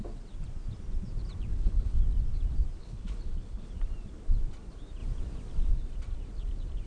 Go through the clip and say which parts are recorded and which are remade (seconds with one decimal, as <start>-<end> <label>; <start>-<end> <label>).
0.0-1.5 recorded; 1.5-2.0 remade; 2.0-2.8 recorded; 2.8-3.7 remade; 3.7-6.9 recorded